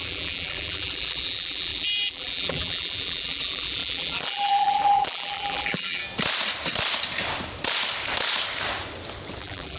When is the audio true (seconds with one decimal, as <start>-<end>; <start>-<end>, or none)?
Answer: 6.0-9.4